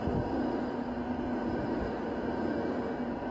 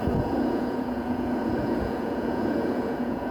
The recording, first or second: first